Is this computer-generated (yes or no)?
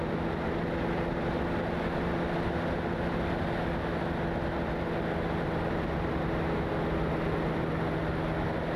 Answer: no